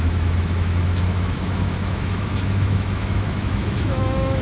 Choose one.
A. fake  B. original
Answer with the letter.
A